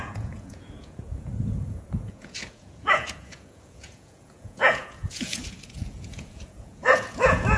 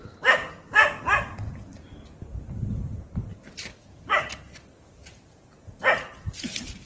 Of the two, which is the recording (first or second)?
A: second